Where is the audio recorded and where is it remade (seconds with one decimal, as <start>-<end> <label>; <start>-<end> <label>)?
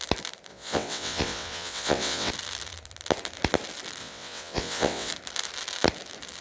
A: 0.0-0.5 recorded; 0.5-2.3 remade; 2.3-4.0 recorded; 4.0-5.1 remade; 5.1-6.4 recorded